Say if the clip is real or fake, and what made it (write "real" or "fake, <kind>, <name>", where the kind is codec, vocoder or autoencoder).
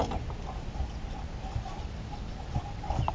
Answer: real